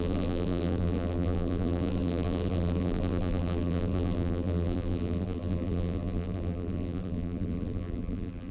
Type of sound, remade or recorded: remade